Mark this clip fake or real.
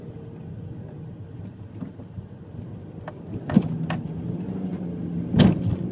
real